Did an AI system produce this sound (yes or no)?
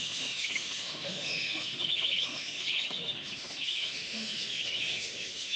yes